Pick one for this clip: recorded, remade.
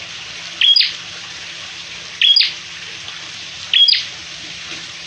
recorded